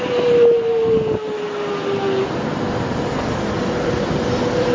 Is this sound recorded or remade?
recorded